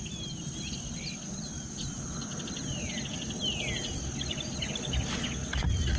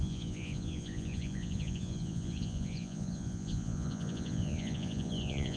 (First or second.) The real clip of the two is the first